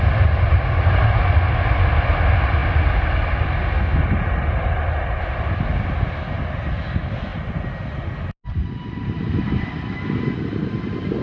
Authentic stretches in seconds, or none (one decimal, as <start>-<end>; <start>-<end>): 0.0-11.2